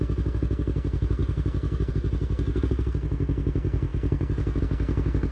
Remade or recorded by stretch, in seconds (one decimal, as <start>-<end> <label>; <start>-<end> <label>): 0.0-5.3 remade